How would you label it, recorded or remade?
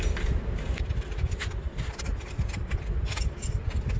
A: recorded